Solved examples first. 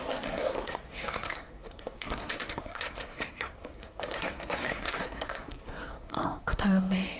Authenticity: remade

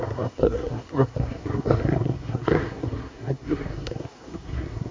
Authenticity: remade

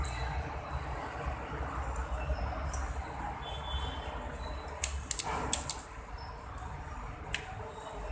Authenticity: recorded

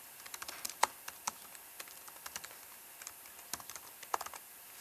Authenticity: recorded